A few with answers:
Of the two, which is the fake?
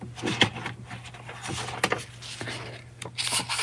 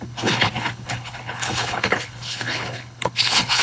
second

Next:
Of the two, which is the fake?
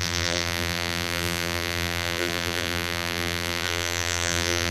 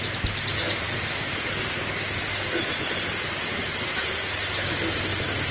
first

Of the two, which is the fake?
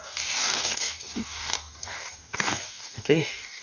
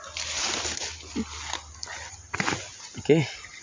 first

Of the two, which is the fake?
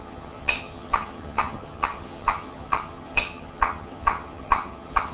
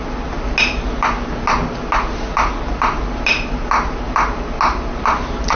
first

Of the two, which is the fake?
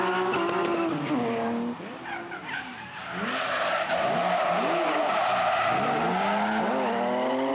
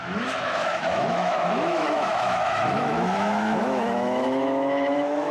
second